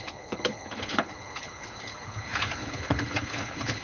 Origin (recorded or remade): remade